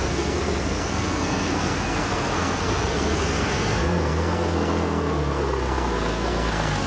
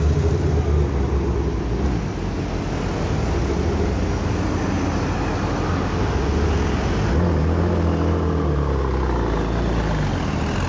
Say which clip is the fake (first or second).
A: first